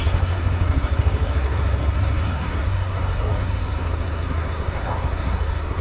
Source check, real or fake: fake